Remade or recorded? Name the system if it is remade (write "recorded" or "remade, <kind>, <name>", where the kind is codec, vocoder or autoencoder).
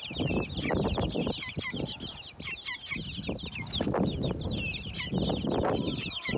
recorded